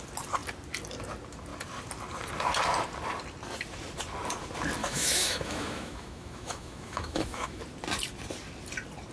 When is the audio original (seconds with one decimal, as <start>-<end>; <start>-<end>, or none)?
0.0-4.8; 7.6-9.1